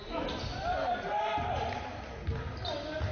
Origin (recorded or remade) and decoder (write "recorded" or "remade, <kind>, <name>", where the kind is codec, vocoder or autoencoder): recorded